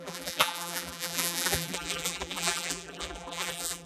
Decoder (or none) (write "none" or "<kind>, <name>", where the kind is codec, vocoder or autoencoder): vocoder, BigVGAN v2